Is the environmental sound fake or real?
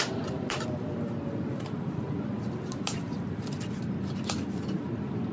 real